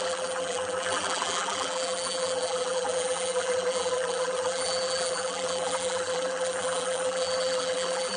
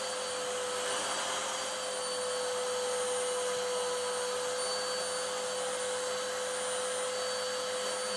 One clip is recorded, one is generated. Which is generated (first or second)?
first